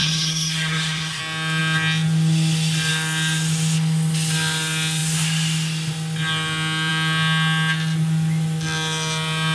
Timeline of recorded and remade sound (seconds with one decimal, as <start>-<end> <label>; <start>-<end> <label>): 0.0-1.2 remade; 1.2-9.5 recorded